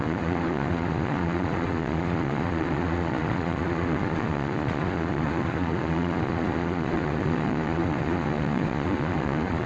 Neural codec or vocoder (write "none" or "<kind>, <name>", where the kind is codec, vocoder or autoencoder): vocoder, Vocos